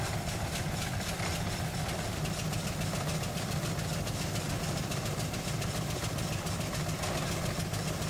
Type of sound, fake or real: real